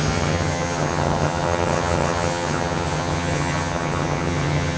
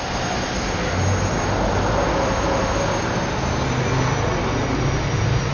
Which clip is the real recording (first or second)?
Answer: second